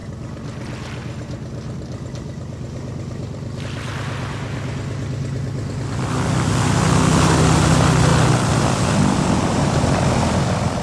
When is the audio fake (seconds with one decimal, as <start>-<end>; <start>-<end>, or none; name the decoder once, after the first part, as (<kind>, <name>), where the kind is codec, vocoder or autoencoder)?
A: none